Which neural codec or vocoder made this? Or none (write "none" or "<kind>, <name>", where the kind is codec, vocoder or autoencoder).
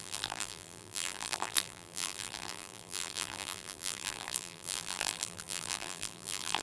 vocoder, BigVGAN v2